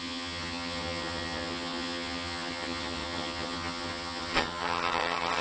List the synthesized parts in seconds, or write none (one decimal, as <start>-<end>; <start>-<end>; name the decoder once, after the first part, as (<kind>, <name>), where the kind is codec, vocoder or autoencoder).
0.0-5.4 (vocoder, HiFi-GAN)